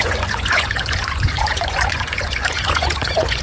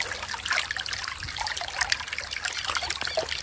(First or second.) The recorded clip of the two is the second